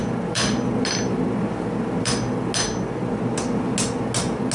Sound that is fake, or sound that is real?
real